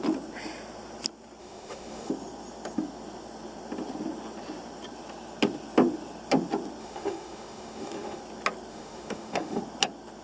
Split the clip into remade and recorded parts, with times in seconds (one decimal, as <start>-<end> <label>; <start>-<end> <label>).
0.0-1.4 recorded; 1.4-2.1 remade; 2.1-6.8 recorded; 6.8-8.2 remade; 8.2-8.7 recorded; 8.7-9.6 remade; 9.6-10.2 recorded